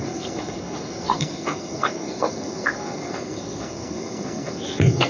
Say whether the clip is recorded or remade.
remade